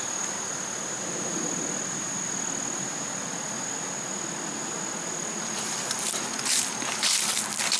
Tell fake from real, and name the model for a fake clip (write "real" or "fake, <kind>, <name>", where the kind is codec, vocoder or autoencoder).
real